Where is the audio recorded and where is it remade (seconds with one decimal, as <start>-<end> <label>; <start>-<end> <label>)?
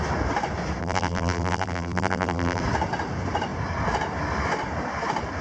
0.0-0.8 recorded; 0.8-2.6 remade; 2.6-5.4 recorded